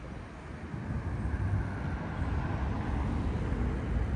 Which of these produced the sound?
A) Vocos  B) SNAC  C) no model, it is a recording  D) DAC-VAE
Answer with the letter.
C